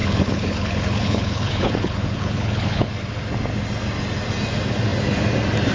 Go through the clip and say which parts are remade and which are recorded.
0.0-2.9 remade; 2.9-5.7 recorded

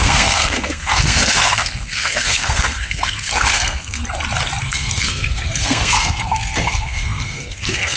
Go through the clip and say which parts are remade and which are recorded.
0.0-4.0 remade; 4.0-4.6 recorded; 4.6-8.0 remade

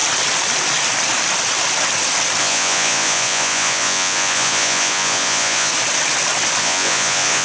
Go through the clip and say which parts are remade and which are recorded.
0.0-2.4 recorded; 2.4-5.7 remade; 5.7-6.6 recorded; 6.6-7.4 remade

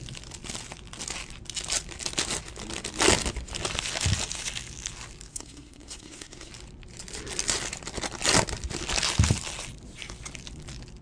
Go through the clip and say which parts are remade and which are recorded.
0.0-5.3 recorded; 5.3-6.5 remade; 6.5-11.0 recorded

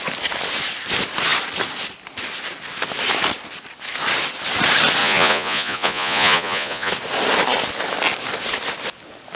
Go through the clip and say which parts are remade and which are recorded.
0.0-5.0 recorded; 5.0-6.9 remade; 6.9-9.4 recorded

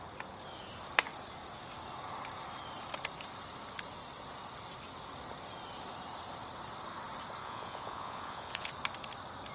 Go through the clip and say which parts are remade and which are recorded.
0.0-7.4 recorded; 7.4-8.7 remade; 8.7-9.5 recorded

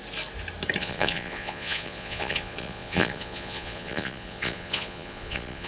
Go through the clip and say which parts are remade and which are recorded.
0.0-0.8 recorded; 0.8-5.7 remade